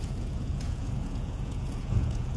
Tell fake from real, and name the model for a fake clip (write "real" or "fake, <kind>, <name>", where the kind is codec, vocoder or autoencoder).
fake, vocoder, Vocos